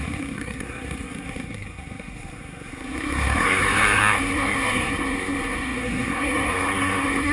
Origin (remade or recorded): remade